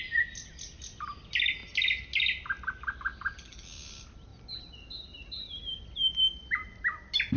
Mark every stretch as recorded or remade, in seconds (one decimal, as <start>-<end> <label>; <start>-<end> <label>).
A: 0.0-7.4 recorded